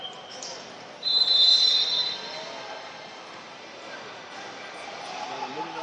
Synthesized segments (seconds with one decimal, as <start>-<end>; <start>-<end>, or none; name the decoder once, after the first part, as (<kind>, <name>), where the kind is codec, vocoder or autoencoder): 0.0-1.5 (vocoder, BigVGAN v2); 5.0-5.8